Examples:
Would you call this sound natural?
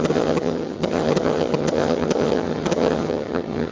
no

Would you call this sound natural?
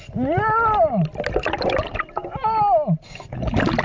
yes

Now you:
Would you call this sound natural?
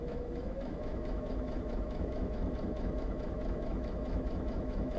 no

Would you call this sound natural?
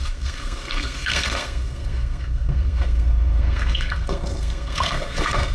no